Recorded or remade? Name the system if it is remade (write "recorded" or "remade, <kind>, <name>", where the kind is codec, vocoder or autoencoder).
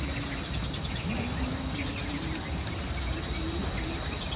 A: recorded